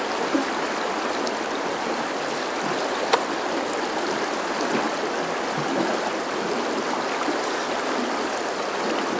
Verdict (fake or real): real